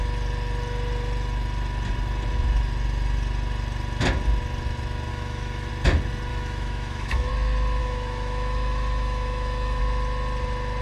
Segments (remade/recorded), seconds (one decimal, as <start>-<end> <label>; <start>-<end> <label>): 0.0-5.1 recorded; 5.1-5.7 remade; 5.7-6.3 recorded; 6.3-7.3 remade; 7.3-7.8 recorded; 7.8-9.8 remade; 9.8-10.8 recorded